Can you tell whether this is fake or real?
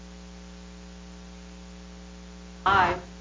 real